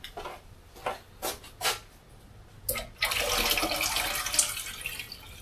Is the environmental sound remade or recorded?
recorded